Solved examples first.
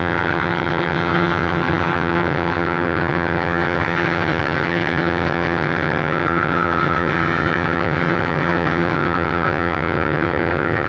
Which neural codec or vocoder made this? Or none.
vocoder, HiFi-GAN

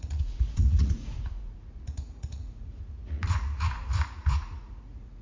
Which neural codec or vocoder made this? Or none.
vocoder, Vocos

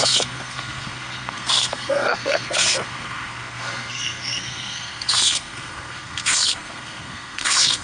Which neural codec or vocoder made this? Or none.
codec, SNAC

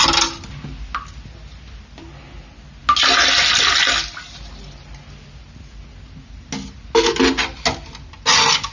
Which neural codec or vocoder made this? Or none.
none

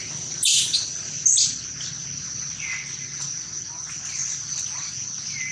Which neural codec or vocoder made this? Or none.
none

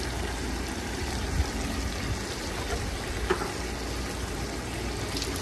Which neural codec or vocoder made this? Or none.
none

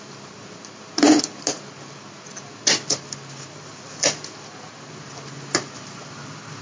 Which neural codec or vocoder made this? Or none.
none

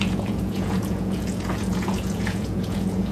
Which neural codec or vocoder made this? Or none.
vocoder, Vocos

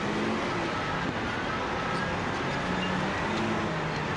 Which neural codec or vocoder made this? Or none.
none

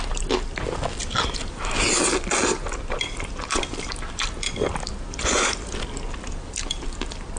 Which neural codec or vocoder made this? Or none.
none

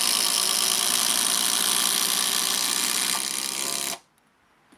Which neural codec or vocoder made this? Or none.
none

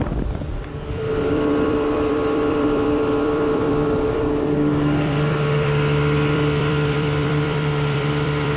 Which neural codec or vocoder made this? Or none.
vocoder, BigVGAN v2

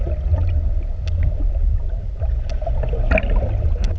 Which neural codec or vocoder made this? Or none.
none